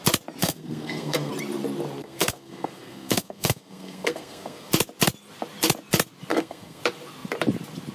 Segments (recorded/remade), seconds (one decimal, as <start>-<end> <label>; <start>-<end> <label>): 0.0-0.4 recorded; 0.4-1.3 remade; 1.3-2.0 recorded; 2.0-4.7 remade; 4.7-6.3 recorded; 6.3-6.8 remade; 6.8-7.9 recorded